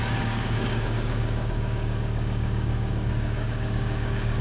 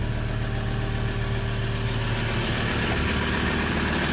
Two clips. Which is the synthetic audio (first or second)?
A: first